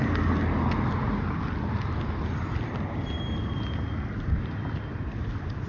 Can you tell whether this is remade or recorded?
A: recorded